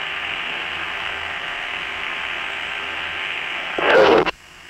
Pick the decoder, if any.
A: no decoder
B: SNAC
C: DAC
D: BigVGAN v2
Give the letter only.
B